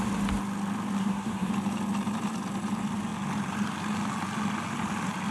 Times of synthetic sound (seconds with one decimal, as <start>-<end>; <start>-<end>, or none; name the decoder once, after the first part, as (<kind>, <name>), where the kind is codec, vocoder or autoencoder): 1.0-1.5 (codec, SNAC)